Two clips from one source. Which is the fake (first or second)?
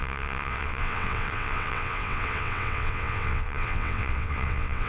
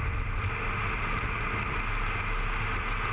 first